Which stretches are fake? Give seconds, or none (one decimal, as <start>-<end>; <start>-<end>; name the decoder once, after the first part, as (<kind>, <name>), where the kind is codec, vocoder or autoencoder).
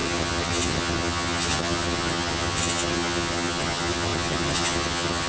0.0-5.3 (vocoder, HiFi-GAN)